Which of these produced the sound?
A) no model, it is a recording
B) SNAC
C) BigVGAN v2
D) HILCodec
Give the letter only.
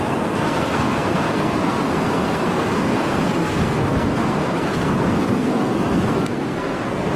B